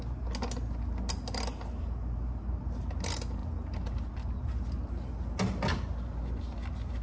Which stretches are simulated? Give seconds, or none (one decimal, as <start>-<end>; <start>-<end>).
none